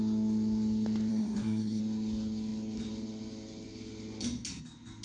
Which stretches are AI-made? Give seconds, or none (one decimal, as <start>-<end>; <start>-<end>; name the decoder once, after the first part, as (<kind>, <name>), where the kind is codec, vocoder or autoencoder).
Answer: 1.1-1.8 (codec, SNAC)